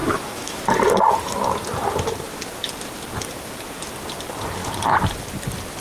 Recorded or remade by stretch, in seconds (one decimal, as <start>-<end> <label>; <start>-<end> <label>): 0.0-0.6 remade; 0.6-5.8 recorded

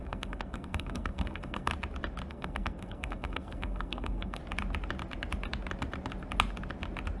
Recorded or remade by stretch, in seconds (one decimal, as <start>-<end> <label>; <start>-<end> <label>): 0.0-1.7 remade; 1.7-2.3 recorded; 2.3-4.4 remade; 4.4-7.2 recorded

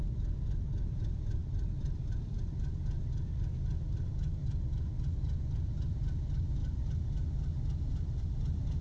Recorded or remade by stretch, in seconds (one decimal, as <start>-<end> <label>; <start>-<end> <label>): 0.0-8.8 recorded

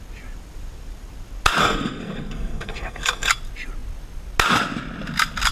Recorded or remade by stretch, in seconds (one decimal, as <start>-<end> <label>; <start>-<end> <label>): 0.0-1.6 recorded; 1.6-3.3 remade; 3.3-5.5 recorded

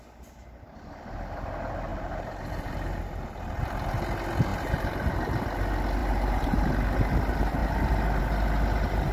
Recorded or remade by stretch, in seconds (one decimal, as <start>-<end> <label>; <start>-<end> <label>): 0.0-1.9 recorded; 1.9-3.6 remade; 3.6-4.5 recorded; 4.5-5.1 remade; 5.1-6.0 recorded; 6.0-6.7 remade; 6.7-9.1 recorded